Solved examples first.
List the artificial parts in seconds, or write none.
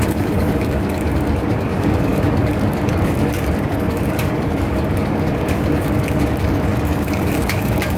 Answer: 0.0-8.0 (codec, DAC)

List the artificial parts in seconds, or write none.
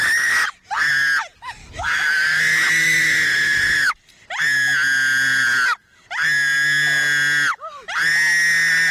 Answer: 1.6-4.0 (autoencoder, DAC-VAE)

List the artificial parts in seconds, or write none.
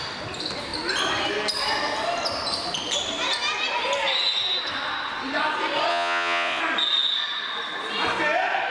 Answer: 5.9-6.6 (vocoder, Vocos)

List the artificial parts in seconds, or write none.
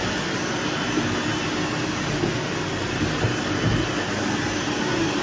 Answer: none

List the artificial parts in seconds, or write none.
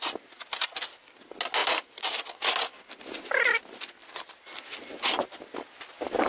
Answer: 1.6-2.2 (vocoder, BigVGAN v2)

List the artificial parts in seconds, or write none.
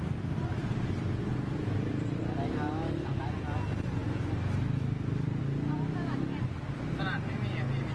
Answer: none